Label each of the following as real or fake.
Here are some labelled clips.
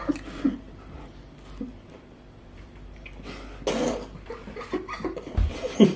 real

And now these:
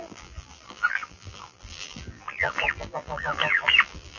fake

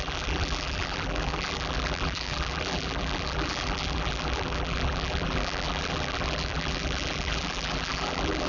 fake